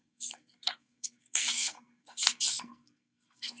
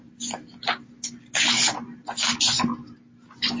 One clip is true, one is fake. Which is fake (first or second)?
first